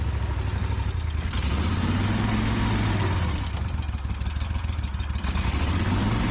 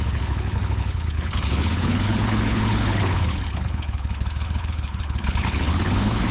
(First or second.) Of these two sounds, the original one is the first